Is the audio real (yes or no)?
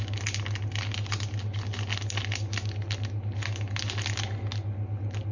yes